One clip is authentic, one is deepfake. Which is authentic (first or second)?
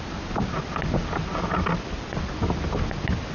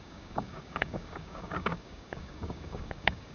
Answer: first